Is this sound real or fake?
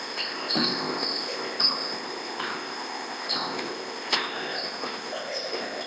fake